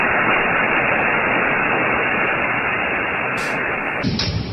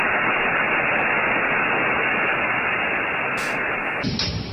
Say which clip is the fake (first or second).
first